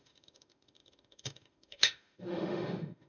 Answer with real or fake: fake